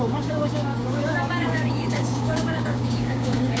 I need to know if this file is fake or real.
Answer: fake